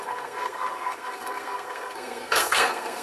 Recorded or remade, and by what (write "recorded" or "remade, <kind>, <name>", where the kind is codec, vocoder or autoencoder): remade, codec, SNAC